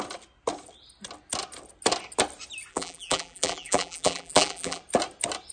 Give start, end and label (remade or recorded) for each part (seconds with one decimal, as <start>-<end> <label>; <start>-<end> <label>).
0.0-2.7 recorded; 2.7-4.8 remade; 4.8-5.5 recorded